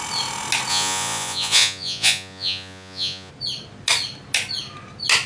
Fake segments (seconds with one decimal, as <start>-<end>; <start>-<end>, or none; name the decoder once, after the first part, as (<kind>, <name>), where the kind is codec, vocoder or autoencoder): 0.7-3.3 (vocoder, Vocos)